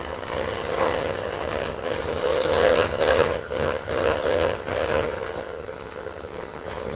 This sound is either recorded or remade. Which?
remade